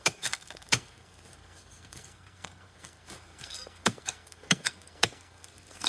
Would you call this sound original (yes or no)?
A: no